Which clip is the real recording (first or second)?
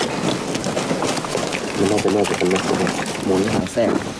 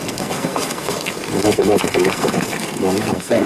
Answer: first